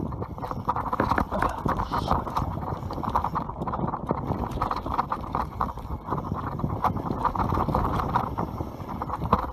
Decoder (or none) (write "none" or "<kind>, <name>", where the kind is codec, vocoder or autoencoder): none